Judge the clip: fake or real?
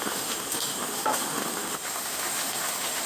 fake